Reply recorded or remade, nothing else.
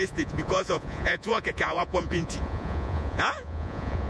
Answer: remade